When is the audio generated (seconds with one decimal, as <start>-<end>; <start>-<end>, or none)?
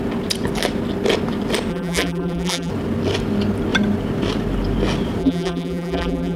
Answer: 1.7-2.7; 5.2-6.4